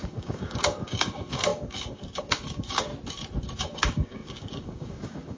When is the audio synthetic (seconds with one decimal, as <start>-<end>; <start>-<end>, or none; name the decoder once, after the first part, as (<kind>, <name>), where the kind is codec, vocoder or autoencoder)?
0.0-2.9 (codec, DAC); 3.6-5.4